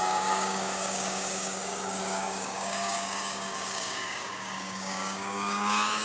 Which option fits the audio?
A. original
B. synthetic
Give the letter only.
B